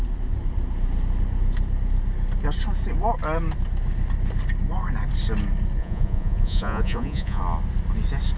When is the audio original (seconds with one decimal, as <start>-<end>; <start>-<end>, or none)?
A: 0.0-5.8; 7.4-8.4